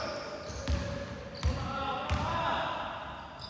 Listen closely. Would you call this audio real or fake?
real